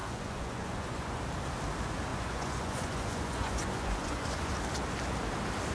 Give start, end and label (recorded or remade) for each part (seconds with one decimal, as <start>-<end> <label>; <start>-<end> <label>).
0.0-1.2 remade; 1.2-2.1 recorded; 2.1-4.5 remade; 4.5-5.7 recorded